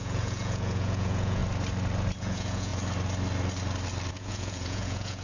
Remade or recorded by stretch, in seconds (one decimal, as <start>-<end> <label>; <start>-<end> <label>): 0.0-1.4 remade; 1.4-2.2 recorded; 2.2-2.7 remade; 2.7-4.1 recorded; 4.1-5.2 remade